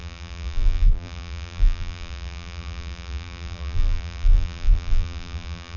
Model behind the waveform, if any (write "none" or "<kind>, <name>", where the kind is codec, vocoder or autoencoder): vocoder, BigVGAN v2